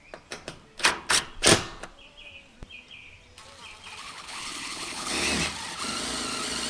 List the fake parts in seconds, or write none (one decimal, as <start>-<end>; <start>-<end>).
4.0-5.3